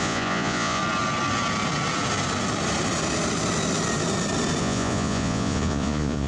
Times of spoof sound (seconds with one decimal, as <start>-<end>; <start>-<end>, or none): 0.0-0.8; 4.6-6.3